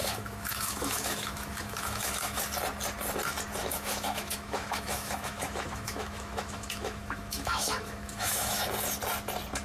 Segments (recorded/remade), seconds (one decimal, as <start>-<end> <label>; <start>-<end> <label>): 0.0-2.4 remade; 2.4-3.6 recorded; 3.6-8.6 remade; 8.6-9.6 recorded